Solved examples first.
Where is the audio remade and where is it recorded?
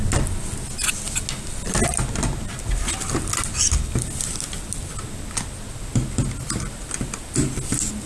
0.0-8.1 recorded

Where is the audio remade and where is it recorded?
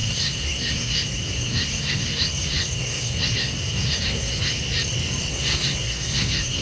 0.0-4.6 remade; 4.6-5.3 recorded; 5.3-6.6 remade